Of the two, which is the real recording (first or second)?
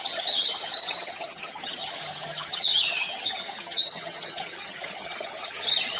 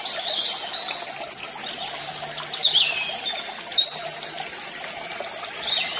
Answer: second